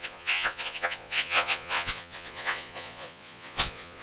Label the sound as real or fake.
fake